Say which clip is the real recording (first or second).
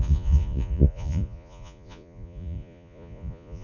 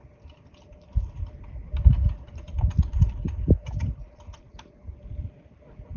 second